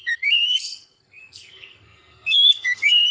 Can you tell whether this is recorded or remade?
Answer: remade